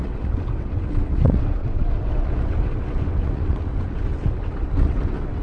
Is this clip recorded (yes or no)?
no